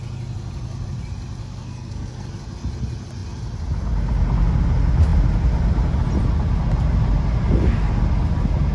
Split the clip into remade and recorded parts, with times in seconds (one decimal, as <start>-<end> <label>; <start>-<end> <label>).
0.0-1.4 recorded; 1.4-2.3 remade; 2.3-8.7 recorded